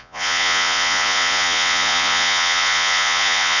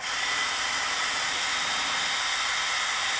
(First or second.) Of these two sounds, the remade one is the first